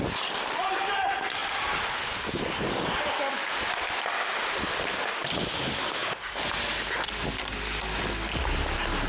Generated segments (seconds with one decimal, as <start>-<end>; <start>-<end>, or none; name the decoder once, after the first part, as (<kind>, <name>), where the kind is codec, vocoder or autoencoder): none